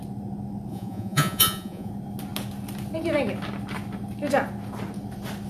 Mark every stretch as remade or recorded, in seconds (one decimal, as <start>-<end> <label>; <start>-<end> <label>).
0.0-0.7 recorded; 0.7-1.9 remade; 1.9-5.5 recorded